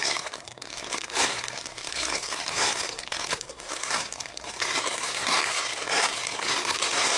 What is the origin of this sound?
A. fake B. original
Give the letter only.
A